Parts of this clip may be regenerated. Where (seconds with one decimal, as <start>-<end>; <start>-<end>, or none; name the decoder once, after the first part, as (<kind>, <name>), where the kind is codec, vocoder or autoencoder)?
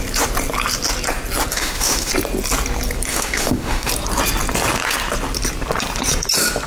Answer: 1.5-2.1 (autoencoder, DAC-VAE); 3.1-3.9